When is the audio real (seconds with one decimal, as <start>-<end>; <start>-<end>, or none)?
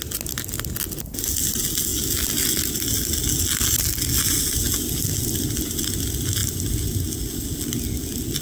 0.0-6.4; 6.9-8.4